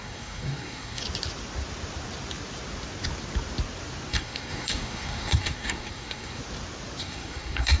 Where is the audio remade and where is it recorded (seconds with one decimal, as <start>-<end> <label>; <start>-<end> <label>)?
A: 0.0-1.0 remade; 1.0-4.1 recorded; 4.1-6.4 remade; 6.4-7.0 recorded; 7.0-7.8 remade